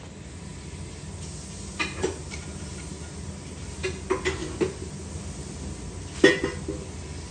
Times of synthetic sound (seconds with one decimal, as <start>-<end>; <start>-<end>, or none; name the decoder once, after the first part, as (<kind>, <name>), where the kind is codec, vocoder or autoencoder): 4.4-4.9 (vocoder, BigVGAN v2)